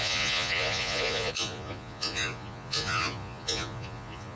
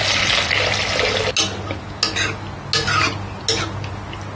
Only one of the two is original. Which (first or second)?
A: second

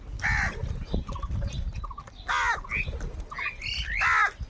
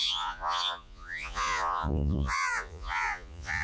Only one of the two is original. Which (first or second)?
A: first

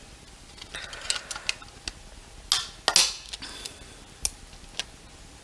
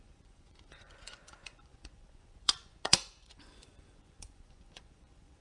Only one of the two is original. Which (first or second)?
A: first